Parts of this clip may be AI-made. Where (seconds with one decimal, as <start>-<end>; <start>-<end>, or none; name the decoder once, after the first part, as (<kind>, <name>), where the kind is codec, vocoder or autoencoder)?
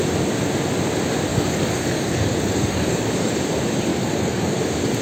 1.3-3.3 (codec, DAC); 3.9-4.6